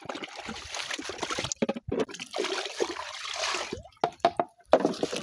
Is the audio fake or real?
real